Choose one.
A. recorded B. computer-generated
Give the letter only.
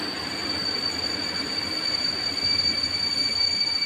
A